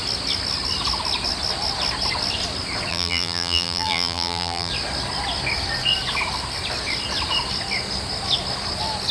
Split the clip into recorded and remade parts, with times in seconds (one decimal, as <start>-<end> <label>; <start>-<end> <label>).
0.0-2.9 recorded; 2.9-4.7 remade; 4.7-9.1 recorded